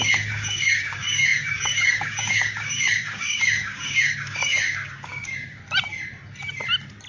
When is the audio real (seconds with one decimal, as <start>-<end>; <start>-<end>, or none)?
5.6-7.1